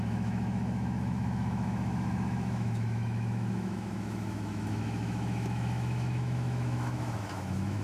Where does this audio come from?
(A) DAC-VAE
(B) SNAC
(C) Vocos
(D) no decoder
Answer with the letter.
A